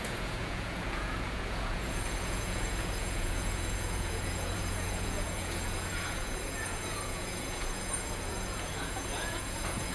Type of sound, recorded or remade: remade